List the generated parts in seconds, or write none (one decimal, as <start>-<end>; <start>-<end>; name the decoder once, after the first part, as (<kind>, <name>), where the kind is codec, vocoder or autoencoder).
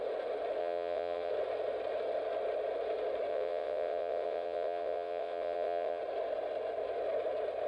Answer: 0.6-1.3 (vocoder, WaveNeXt); 3.3-6.0